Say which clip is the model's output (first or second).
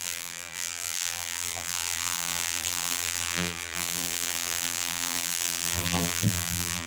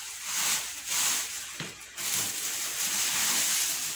first